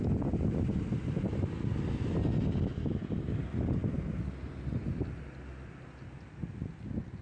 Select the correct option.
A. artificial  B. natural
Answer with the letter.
B